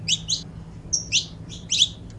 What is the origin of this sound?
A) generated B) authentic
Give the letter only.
B